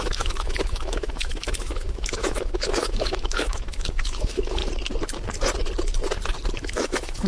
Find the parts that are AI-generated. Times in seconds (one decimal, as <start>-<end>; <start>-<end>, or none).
0.0-4.6; 6.5-7.3

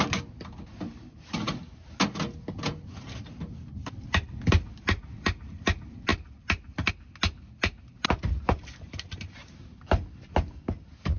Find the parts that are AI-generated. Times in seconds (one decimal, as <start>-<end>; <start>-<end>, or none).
none

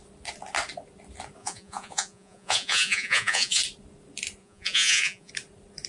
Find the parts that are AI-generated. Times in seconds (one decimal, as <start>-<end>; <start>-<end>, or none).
1.4-3.6; 4.4-5.3

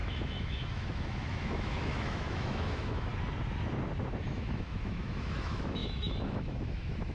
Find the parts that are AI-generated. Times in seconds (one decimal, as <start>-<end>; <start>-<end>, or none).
0.0-3.1; 4.3-7.1

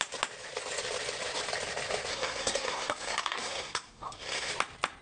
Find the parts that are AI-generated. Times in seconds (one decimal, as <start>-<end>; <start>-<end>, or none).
2.1-4.5

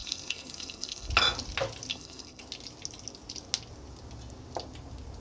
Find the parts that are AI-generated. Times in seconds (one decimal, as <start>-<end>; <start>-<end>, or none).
0.0-1.1; 1.9-2.4

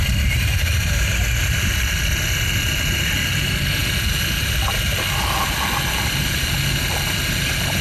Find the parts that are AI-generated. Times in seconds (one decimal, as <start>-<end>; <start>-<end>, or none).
none

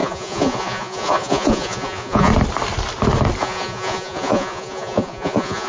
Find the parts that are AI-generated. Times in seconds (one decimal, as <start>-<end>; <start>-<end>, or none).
0.0-2.3; 3.4-5.7